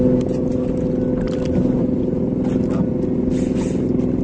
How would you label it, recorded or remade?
recorded